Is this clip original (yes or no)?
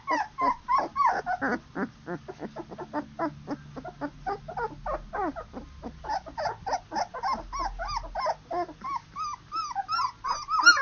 yes